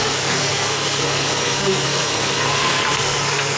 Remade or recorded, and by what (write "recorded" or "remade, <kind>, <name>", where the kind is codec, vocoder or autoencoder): remade, codec, SNAC